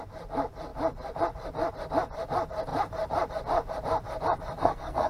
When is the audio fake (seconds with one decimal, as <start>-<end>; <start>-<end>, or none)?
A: 4.6-5.1